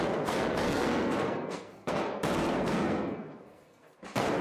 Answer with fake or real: fake